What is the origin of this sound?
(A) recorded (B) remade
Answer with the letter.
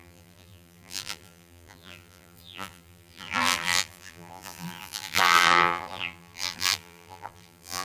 B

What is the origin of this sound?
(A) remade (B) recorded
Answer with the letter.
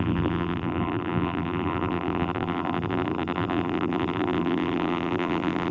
A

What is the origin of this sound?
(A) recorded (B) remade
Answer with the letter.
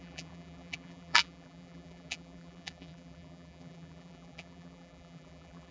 B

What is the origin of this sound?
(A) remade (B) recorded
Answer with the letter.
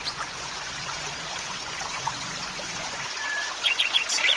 A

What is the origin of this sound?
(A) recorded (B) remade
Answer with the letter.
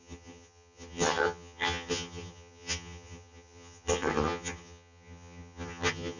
B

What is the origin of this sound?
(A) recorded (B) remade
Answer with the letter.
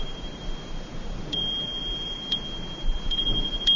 B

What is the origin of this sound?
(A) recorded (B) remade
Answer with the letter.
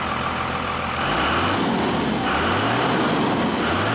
A